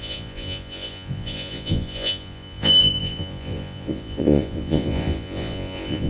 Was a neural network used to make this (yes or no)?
yes